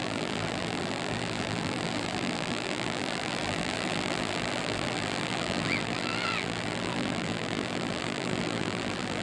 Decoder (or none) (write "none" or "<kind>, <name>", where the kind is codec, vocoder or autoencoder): vocoder, BigVGAN v2